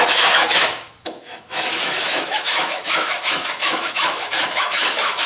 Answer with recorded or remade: remade